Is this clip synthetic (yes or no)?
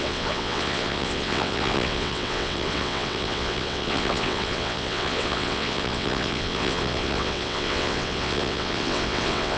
yes